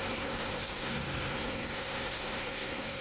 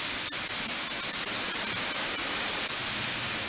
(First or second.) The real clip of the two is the second